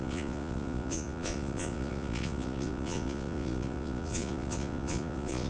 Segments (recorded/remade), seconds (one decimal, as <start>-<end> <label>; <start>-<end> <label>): 0.0-5.5 remade